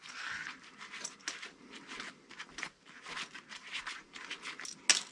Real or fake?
real